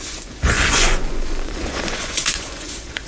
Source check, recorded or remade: remade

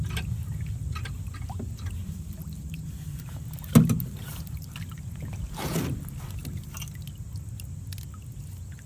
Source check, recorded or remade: recorded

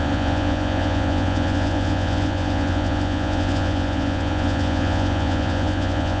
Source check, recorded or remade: remade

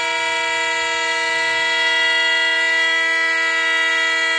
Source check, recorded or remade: recorded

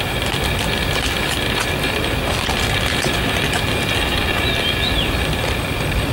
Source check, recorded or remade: recorded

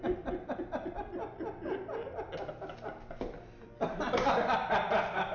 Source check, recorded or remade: recorded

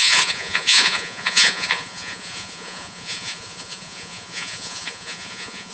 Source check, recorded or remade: remade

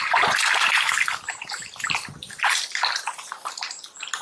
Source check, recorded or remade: recorded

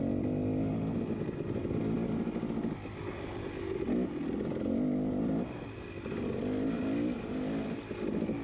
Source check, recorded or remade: recorded